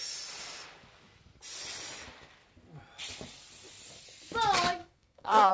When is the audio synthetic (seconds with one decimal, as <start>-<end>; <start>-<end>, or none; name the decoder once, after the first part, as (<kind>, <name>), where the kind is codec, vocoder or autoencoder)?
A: 4.8-5.5 (codec, SNAC)